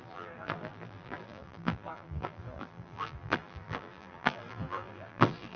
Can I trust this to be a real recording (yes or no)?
no